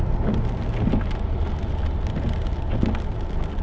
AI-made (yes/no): no